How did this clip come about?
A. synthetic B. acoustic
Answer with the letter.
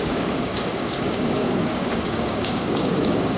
A